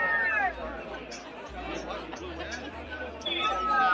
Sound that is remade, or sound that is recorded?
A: recorded